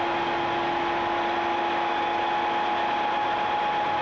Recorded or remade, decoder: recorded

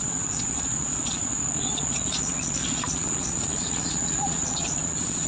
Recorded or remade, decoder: remade, vocoder, Vocos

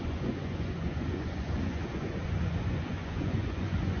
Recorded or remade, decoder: remade, vocoder, Vocos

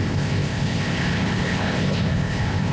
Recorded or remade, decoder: remade, codec, ZipCodec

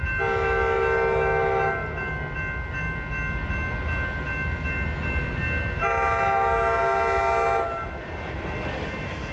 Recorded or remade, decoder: recorded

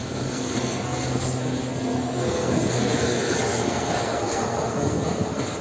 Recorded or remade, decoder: remade, codec, SNAC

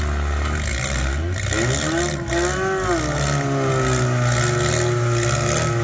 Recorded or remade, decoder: recorded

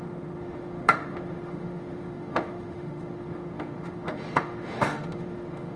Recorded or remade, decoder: remade, autoencoder, DAC-VAE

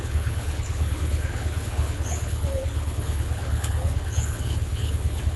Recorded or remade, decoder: remade, codec, HILCodec